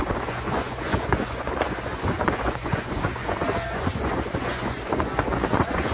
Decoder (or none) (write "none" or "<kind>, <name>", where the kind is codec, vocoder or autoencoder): vocoder, Vocos